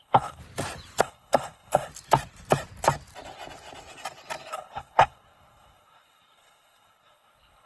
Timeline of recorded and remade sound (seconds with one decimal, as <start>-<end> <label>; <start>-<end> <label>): 0.0-0.4 remade; 0.4-1.0 recorded; 1.0-1.9 remade; 1.9-4.5 recorded; 4.5-7.7 remade